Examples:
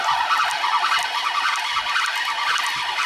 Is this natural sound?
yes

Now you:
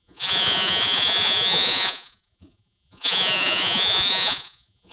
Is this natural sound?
no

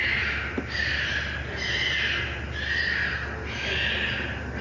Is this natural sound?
yes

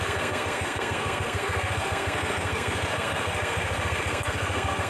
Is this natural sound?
no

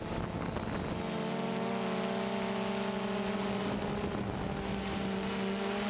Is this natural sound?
yes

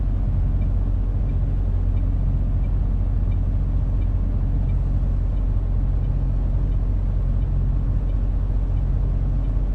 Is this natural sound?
yes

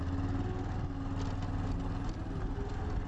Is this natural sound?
yes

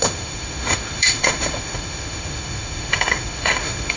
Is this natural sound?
no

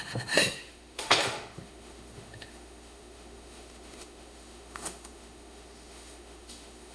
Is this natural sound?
no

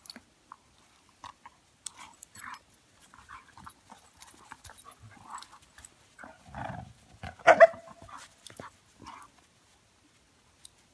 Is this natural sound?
yes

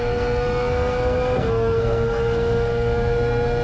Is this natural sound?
no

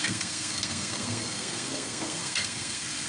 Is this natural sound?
no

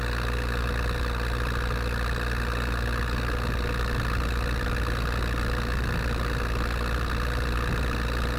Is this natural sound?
yes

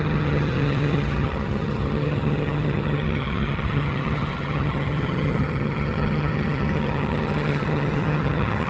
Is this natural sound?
no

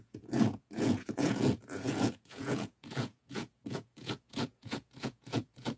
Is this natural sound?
no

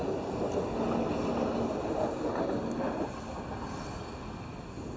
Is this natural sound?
yes